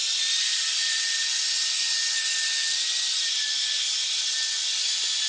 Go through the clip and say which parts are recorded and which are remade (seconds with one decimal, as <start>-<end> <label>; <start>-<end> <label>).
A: 0.0-5.3 recorded